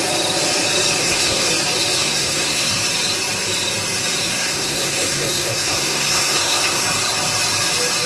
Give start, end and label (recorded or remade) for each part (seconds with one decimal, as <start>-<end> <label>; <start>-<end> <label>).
0.0-1.0 recorded; 1.0-1.5 remade; 1.5-1.9 recorded; 1.9-2.8 remade; 2.8-4.3 recorded; 4.3-6.8 remade; 6.8-8.1 recorded

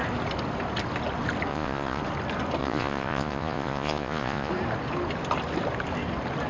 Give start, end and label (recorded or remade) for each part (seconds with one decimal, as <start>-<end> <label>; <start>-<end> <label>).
0.0-1.5 recorded; 1.5-2.0 remade; 2.0-2.6 recorded; 2.6-4.5 remade; 4.5-6.5 recorded

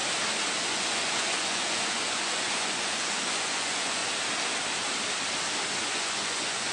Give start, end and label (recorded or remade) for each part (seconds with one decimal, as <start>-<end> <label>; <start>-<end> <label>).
0.0-0.6 recorded; 0.6-4.0 remade; 4.0-5.8 recorded; 5.8-6.7 remade

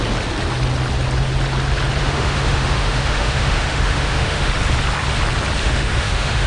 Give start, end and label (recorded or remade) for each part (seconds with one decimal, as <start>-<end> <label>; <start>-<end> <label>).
0.0-2.0 recorded; 2.0-4.5 remade; 4.5-5.6 recorded; 5.6-6.5 remade

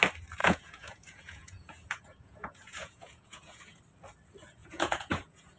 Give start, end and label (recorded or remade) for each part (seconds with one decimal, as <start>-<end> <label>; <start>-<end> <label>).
0.0-0.4 recorded; 0.4-3.8 remade; 3.8-4.6 recorded; 4.6-5.6 remade

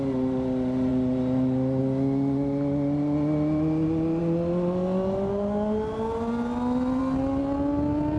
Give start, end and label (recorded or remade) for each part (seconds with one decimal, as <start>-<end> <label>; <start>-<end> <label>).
0.0-8.2 recorded